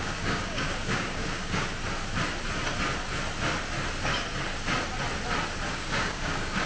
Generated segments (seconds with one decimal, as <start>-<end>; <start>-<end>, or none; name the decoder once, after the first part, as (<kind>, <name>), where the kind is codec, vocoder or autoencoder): 0.0-1.7 (codec, DAC); 5.7-6.7